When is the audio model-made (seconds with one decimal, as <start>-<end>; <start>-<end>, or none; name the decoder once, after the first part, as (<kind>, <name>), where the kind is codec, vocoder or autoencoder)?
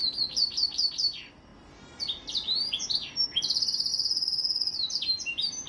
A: 0.0-5.7 (vocoder, BigVGAN v2)